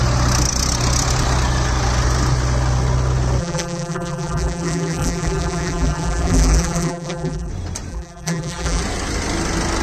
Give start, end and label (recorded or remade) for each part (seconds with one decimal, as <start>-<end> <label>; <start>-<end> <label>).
0.0-3.4 recorded; 3.4-7.5 remade; 7.5-7.9 recorded; 7.9-8.8 remade; 8.8-9.8 recorded